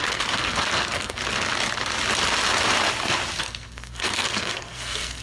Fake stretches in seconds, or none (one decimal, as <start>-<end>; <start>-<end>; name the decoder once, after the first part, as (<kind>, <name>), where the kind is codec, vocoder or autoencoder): 0.0-1.2 (codec, SNAC); 3.4-5.2